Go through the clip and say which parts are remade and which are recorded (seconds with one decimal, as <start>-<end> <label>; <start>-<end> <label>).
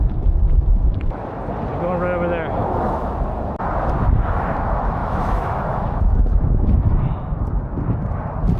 0.0-2.6 recorded; 2.6-3.1 remade; 3.1-5.0 recorded; 5.0-7.0 remade; 7.0-8.6 recorded